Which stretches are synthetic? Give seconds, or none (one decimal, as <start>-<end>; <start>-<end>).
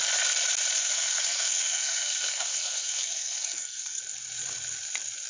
0.8-4.0